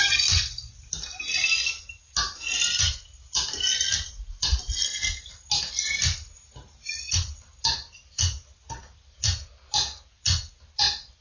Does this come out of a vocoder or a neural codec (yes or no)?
no